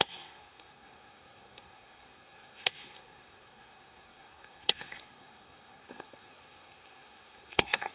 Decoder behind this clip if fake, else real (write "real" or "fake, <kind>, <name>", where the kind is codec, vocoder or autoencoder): fake, codec, SNAC